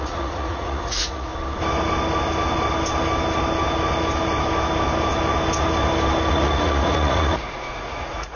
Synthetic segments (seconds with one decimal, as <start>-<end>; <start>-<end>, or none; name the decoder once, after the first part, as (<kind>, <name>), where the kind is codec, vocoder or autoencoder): 0.0-1.3 (vocoder, Vocos); 6.3-8.4